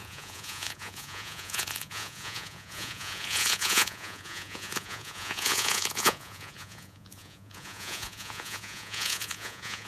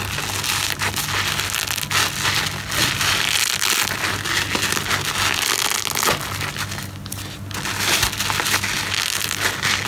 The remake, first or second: first